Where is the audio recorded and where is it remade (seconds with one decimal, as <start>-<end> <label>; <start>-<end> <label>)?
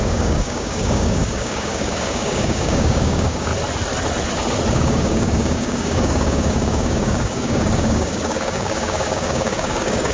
0.0-3.5 remade; 3.5-4.7 recorded; 4.7-10.1 remade